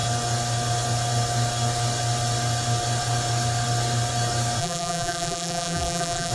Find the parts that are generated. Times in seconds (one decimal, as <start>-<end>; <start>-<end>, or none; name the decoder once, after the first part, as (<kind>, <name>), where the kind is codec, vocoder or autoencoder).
4.6-6.3 (vocoder, BigVGAN v2)